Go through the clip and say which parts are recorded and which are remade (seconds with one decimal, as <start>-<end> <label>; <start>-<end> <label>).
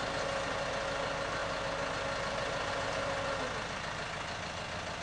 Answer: 0.0-5.0 recorded